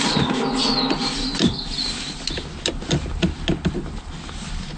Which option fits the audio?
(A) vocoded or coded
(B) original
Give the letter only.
B